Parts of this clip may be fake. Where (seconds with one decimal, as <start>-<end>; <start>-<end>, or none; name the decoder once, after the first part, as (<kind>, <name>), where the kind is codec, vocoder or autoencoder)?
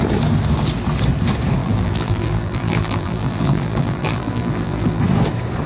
1.6-5.0 (vocoder, BigVGAN v2)